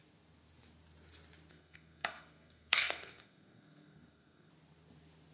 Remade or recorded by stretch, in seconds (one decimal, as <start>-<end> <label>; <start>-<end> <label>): 0.0-1.5 recorded; 1.5-4.5 remade; 4.5-5.3 recorded